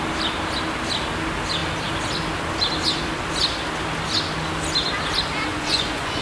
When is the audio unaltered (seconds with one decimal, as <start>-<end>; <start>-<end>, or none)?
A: 0.0-5.5